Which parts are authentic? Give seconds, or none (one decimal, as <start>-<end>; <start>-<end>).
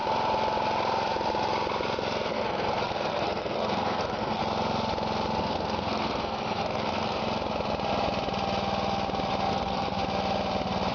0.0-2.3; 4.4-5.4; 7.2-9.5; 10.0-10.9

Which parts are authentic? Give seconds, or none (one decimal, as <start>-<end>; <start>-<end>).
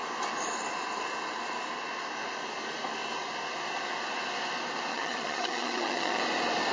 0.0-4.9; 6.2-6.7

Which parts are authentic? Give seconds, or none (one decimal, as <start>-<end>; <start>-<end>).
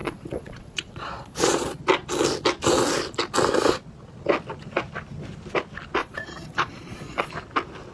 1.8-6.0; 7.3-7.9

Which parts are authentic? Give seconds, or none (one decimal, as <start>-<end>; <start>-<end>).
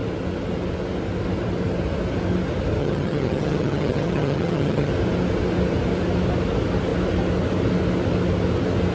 0.0-2.8; 4.9-8.9